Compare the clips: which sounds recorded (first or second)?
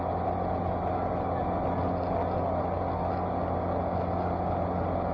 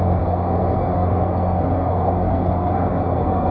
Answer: first